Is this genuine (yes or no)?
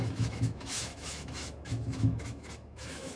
no